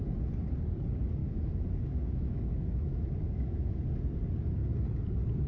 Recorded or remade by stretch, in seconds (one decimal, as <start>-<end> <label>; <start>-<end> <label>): 0.0-1.2 recorded; 1.2-3.7 remade; 3.7-5.5 recorded